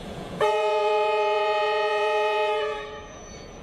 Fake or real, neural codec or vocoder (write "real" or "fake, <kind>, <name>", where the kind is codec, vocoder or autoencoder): fake, vocoder, Vocos